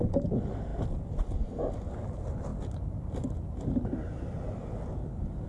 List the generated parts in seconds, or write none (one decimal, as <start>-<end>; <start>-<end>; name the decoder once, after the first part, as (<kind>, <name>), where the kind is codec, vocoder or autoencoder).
none